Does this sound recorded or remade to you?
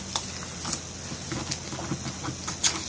recorded